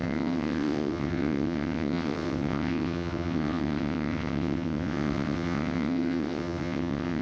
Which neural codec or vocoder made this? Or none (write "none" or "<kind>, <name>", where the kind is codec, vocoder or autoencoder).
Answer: vocoder, WaveNeXt